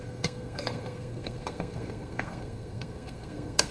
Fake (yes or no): yes